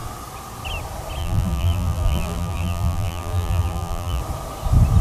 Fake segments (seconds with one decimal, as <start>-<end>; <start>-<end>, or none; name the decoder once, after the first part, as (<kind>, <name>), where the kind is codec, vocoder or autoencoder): 1.2-4.2 (vocoder, BigVGAN v2)